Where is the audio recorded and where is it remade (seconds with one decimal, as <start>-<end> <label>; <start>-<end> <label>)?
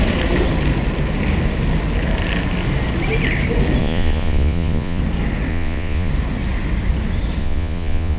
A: 0.0-3.8 recorded; 3.8-5.0 remade; 5.0-5.5 recorded; 5.5-6.1 remade; 6.1-7.4 recorded; 7.4-8.2 remade